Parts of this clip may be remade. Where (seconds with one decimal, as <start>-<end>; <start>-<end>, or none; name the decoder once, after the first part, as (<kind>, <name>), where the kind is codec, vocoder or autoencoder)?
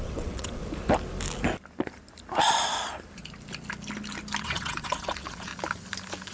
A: 0.0-0.6 (vocoder, WaveNeXt); 4.4-5.5